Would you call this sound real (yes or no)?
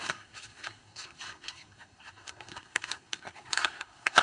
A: no